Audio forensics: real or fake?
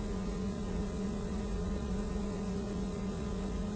fake